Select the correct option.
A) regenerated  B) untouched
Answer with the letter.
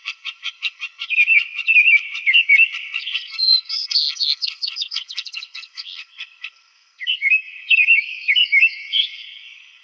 A